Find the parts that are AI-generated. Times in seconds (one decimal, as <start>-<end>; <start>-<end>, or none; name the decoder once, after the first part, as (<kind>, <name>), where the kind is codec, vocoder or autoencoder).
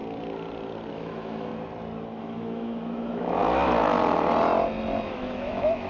0.9-1.5 (autoencoder, DAC-VAE); 2.2-3.4; 5.1-5.9